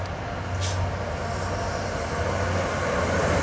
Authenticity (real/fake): real